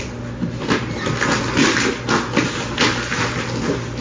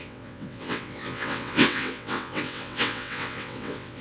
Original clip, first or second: first